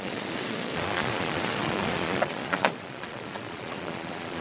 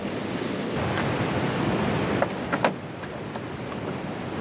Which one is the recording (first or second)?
second